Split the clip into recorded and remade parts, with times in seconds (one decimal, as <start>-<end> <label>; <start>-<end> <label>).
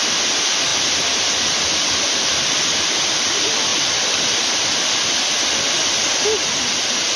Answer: 0.0-0.7 recorded; 0.7-2.5 remade; 2.5-3.7 recorded; 3.7-5.6 remade; 5.6-7.2 recorded